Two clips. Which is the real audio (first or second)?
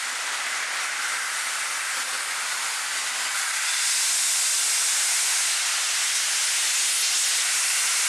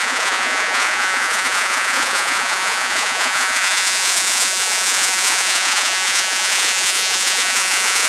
first